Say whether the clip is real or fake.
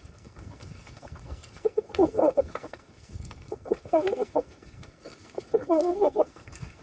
fake